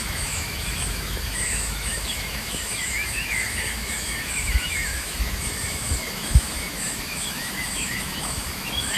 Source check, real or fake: fake